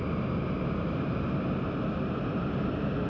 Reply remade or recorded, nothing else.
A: recorded